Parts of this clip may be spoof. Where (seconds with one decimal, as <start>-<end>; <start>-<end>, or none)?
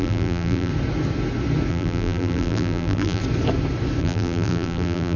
0.0-0.7; 1.7-3.2; 4.0-5.2